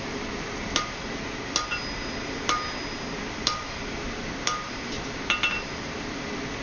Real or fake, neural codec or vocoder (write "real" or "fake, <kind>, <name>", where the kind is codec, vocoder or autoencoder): real